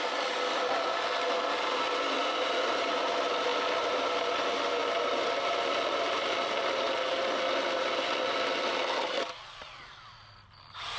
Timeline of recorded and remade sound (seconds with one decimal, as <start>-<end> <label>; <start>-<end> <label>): 0.0-11.0 recorded